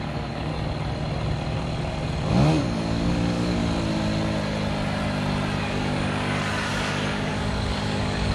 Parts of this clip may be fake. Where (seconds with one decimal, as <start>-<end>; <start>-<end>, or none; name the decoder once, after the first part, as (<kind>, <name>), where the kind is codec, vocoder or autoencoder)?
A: 0.0-0.5 (codec, DAC); 2.5-3.6; 5.6-8.3